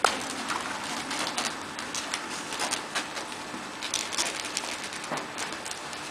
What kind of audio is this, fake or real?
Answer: real